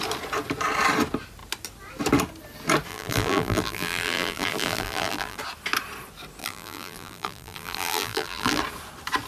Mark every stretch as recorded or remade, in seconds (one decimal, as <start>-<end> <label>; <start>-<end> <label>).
0.0-2.9 recorded; 2.9-5.4 remade; 5.4-6.4 recorded; 6.4-8.6 remade; 8.6-9.3 recorded